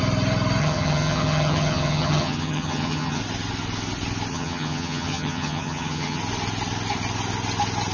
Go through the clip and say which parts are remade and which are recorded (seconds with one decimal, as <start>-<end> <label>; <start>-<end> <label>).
0.0-0.6 recorded; 0.6-3.2 remade; 3.2-4.3 recorded; 4.3-6.2 remade; 6.2-7.9 recorded

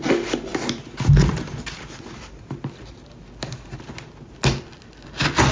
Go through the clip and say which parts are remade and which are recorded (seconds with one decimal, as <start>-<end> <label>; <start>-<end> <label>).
0.0-5.5 recorded

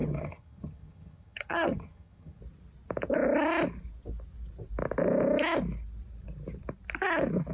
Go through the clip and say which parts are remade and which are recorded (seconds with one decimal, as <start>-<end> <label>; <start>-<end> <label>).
0.0-2.4 remade; 2.4-7.5 recorded

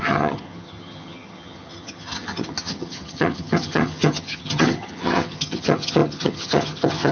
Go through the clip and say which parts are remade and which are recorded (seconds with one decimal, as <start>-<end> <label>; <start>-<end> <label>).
0.0-7.1 remade

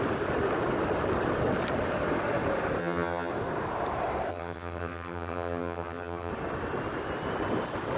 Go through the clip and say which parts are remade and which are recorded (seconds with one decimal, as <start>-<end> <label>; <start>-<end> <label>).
0.0-2.8 recorded; 2.8-3.3 remade; 3.3-4.3 recorded; 4.3-6.3 remade; 6.3-8.0 recorded